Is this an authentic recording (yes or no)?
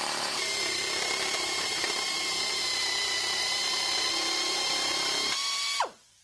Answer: no